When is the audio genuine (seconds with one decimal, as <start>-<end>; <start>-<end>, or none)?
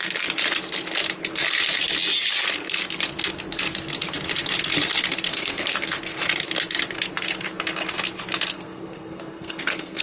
0.0-5.3; 6.0-8.5